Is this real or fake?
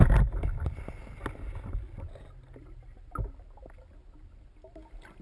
real